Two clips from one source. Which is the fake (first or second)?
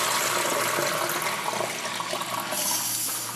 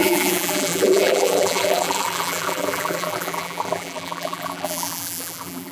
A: second